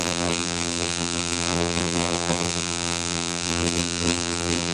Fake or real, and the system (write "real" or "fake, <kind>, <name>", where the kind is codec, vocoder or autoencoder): fake, vocoder, BigVGAN v2